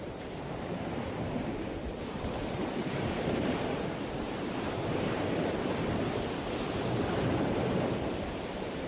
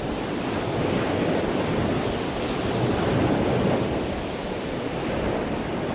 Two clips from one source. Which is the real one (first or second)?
second